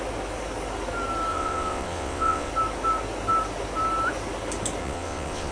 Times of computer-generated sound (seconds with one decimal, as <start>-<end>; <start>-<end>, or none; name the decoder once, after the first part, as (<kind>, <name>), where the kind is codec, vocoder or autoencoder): 1.3-2.5 (vocoder, WaveNeXt); 4.8-5.5